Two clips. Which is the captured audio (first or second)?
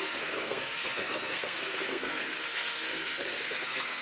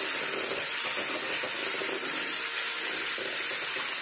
second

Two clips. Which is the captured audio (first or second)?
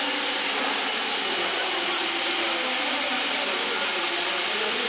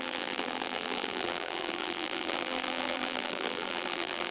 first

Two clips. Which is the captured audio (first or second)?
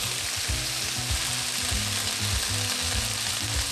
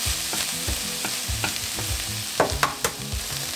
first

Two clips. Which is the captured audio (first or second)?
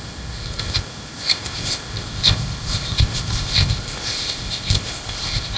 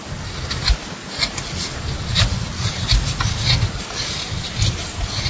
second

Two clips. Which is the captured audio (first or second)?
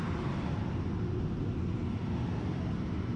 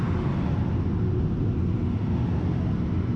second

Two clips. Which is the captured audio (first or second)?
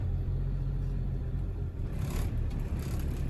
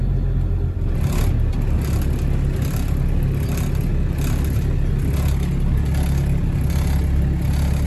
second